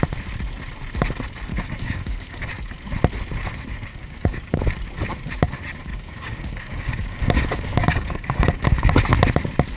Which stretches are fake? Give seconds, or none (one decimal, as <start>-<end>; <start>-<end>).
1.5-2.5; 3.9-4.6; 5.9-8.9